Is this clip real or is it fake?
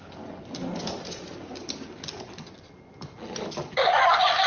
real